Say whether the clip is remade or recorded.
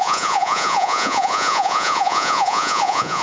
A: remade